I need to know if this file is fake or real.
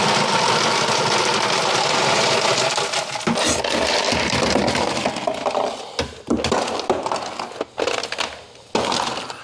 real